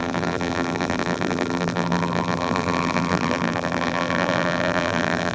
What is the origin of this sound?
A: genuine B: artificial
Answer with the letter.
B